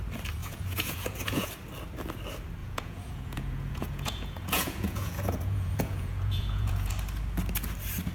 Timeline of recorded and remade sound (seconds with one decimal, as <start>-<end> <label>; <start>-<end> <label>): 0.0-0.4 recorded; 0.4-1.5 remade; 1.5-2.6 recorded; 2.6-6.9 remade; 6.9-8.1 recorded